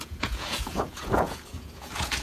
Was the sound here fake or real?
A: fake